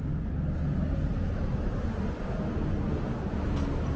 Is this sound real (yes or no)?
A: yes